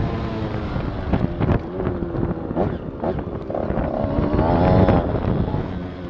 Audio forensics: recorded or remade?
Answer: recorded